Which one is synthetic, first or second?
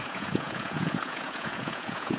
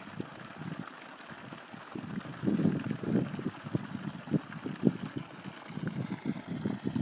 first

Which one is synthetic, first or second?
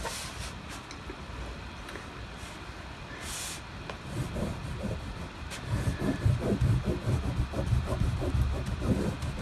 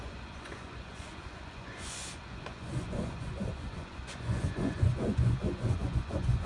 second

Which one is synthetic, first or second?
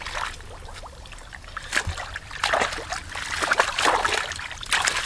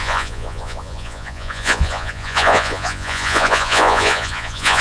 second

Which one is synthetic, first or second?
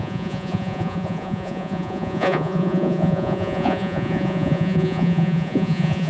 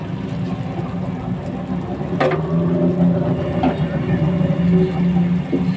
first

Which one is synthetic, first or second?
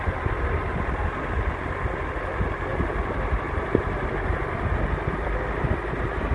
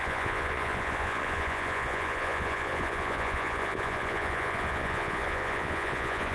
second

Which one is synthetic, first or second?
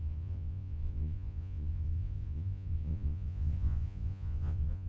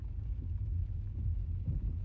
first